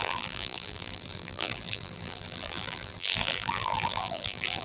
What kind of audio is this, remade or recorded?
remade